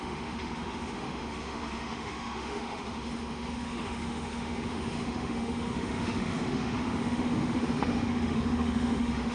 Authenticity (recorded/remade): remade